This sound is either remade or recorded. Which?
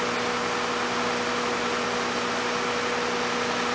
recorded